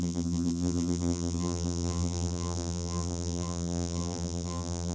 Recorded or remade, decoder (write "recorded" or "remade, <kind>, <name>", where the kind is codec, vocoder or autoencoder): remade, vocoder, BigVGAN v2